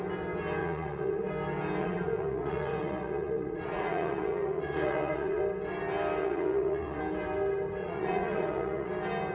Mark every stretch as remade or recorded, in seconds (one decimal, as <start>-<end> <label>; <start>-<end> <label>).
0.0-0.6 recorded; 0.6-1.3 remade; 1.3-1.8 recorded; 1.8-5.4 remade; 5.4-6.2 recorded; 6.2-7.0 remade; 7.0-7.8 recorded; 7.8-8.9 remade; 8.9-9.3 recorded